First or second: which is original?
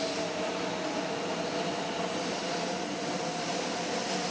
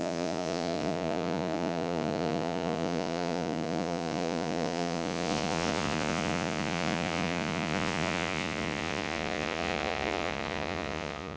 first